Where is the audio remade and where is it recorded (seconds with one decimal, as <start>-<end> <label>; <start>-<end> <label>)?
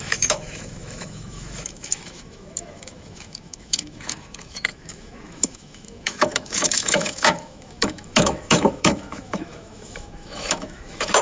0.0-11.2 remade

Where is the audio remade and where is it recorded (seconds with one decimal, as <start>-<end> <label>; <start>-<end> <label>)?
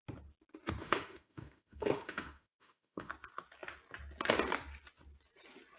0.0-0.8 recorded; 0.8-3.1 remade; 3.1-5.8 recorded